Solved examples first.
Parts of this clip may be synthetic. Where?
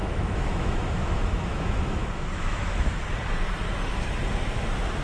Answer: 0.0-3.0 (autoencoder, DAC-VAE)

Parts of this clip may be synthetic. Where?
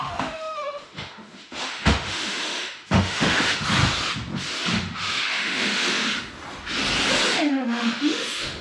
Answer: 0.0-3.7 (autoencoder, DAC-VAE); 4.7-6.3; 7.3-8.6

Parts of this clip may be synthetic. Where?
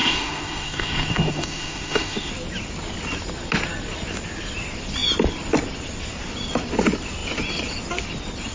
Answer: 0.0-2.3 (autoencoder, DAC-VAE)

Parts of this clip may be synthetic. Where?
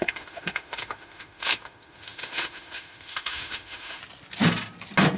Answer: 0.0-4.0 (autoencoder, DAC-VAE)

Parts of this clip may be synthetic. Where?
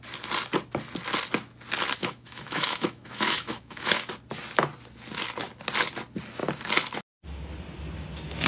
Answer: 2.0-4.1 (autoencoder, DAC-VAE)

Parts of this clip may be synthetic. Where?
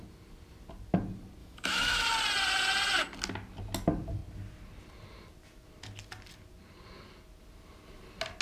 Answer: 1.4-2.1 (autoencoder, DAC-VAE)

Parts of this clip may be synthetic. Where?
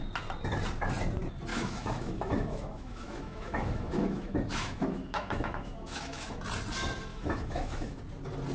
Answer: 1.5-6.4 (autoencoder, DAC-VAE); 7.1-8.0